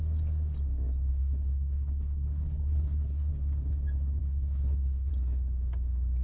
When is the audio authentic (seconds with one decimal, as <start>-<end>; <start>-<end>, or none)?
0.0-1.1; 3.3-4.2; 5.1-6.2